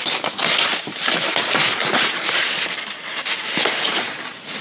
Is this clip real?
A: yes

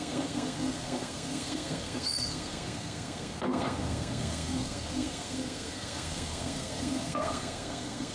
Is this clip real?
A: no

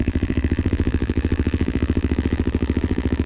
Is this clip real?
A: no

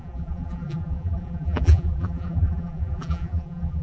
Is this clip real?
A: no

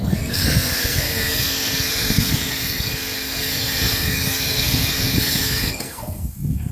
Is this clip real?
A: no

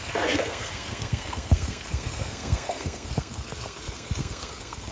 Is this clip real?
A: no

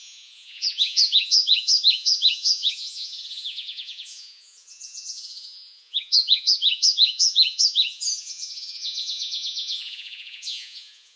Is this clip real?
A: no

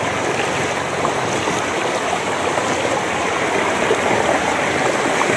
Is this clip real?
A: yes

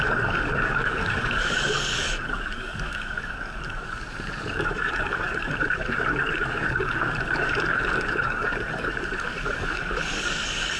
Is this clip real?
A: no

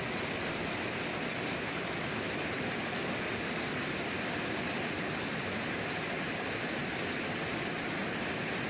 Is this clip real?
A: yes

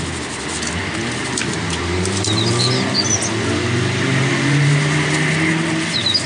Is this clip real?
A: yes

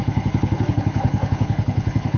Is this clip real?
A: no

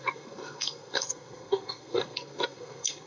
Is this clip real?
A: no